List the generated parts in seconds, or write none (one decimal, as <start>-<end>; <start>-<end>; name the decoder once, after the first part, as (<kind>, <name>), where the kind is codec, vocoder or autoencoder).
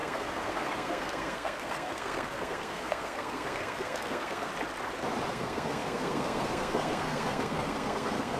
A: 0.0-4.5 (codec, SNAC); 5.3-8.4